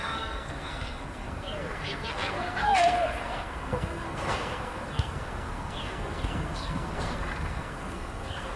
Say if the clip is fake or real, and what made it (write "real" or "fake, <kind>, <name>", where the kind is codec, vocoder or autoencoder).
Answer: fake, codec, SNAC